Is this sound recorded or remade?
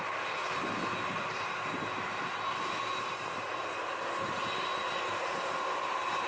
recorded